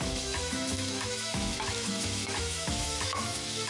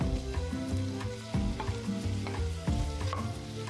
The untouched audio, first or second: second